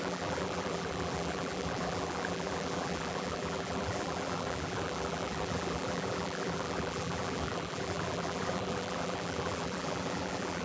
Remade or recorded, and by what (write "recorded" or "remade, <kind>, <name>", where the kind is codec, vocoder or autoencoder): remade, vocoder, BigVGAN v2